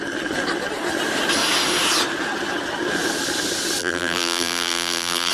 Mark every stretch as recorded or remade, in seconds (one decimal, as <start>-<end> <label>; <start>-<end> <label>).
0.0-3.8 recorded; 3.8-5.3 remade